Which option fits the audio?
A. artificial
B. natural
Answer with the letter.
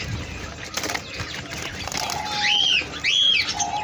B